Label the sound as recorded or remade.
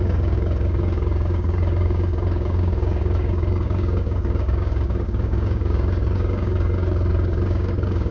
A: remade